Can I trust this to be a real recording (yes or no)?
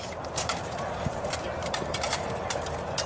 no